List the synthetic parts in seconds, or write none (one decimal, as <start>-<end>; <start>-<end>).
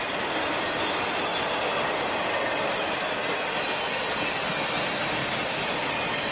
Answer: none